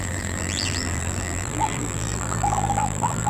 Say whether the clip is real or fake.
fake